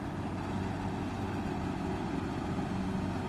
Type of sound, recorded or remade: recorded